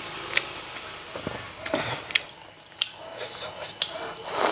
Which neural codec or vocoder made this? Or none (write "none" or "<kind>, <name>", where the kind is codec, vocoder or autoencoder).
none